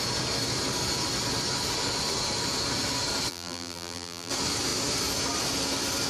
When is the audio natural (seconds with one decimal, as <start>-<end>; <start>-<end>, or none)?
0.0-3.3; 4.3-6.1